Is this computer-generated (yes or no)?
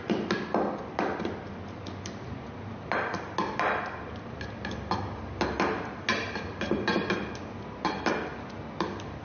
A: no